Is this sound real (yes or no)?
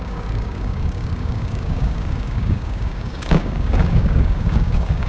no